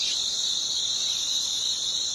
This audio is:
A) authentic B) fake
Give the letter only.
A